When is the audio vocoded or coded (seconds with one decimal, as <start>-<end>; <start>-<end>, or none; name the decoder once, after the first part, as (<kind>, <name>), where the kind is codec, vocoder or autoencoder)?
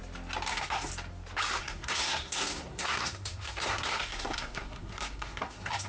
0.5-0.9 (codec, SNAC); 1.6-5.9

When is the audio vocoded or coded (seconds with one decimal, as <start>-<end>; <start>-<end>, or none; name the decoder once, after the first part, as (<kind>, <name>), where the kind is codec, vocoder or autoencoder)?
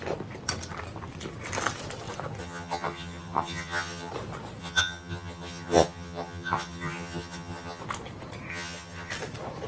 2.4-4.1 (vocoder, HiFi-GAN); 4.6-7.8; 8.5-9.1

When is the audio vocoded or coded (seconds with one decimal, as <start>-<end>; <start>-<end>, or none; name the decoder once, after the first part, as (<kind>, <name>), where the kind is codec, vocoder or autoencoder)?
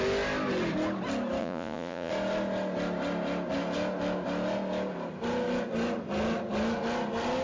1.4-2.1 (vocoder, Vocos)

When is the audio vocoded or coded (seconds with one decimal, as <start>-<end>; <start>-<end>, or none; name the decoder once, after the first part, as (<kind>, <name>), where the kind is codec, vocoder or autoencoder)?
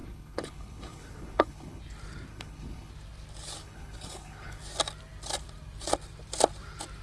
0.0-1.8 (codec, HILCodec); 2.3-2.9; 3.6-4.6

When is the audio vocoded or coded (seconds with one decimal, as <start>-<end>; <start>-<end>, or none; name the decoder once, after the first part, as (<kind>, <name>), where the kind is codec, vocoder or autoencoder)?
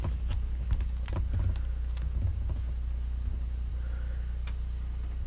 none